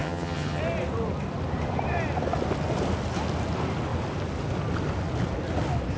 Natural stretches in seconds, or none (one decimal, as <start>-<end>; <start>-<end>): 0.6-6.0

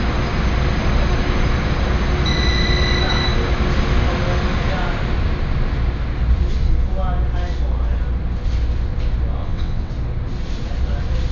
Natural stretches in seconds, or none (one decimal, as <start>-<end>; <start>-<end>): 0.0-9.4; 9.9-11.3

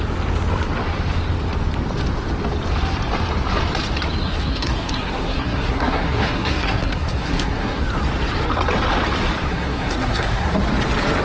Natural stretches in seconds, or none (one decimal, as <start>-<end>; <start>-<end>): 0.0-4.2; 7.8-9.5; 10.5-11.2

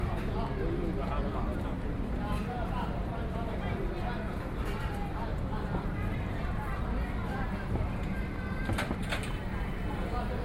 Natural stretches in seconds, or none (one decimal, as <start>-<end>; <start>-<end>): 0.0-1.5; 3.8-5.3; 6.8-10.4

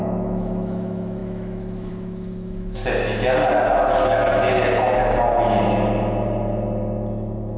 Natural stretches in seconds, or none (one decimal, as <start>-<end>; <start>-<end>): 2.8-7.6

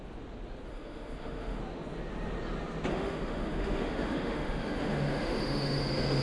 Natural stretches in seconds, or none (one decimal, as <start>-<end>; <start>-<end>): 0.0-0.7; 1.6-2.9; 5.8-6.2

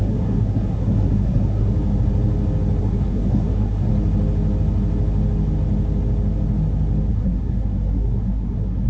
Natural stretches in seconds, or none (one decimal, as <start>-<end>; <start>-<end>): 1.7-2.8; 3.9-7.1